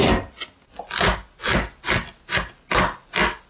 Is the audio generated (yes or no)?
no